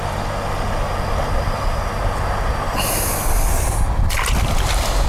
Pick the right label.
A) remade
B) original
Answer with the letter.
B